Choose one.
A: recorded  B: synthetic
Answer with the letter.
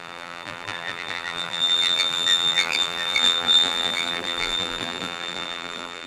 B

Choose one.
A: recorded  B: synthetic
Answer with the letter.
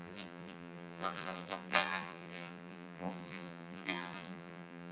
B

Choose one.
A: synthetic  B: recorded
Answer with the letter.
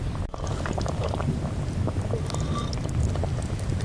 A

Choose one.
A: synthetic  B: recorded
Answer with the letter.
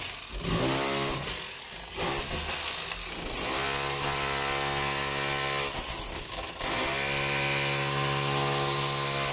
B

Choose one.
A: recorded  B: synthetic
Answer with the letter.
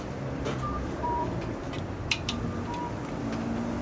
B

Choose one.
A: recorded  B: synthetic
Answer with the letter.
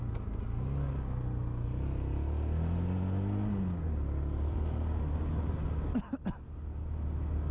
A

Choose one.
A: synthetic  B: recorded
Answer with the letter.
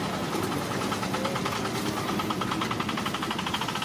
B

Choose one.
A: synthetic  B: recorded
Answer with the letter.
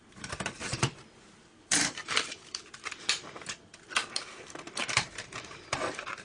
A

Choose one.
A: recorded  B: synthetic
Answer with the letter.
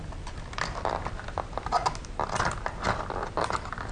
A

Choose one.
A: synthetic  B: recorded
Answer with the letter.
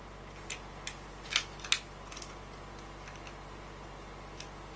B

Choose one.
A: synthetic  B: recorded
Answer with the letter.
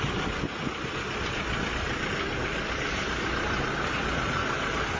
A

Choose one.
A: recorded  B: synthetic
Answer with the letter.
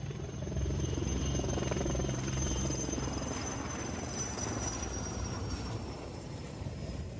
B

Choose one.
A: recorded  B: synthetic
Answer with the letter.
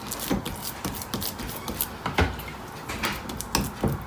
A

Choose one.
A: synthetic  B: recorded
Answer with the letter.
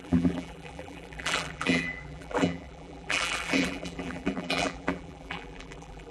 A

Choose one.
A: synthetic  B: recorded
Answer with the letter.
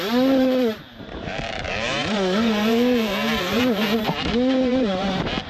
A